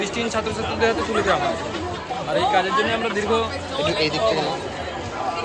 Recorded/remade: recorded